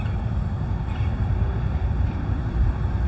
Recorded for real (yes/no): no